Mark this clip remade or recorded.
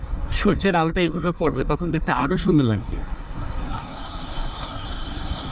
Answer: remade